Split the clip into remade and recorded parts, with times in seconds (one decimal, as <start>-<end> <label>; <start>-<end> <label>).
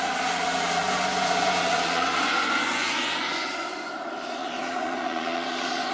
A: 0.0-0.8 recorded; 0.8-3.9 remade; 3.9-4.4 recorded; 4.4-5.9 remade